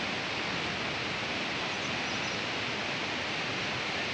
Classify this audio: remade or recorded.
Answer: recorded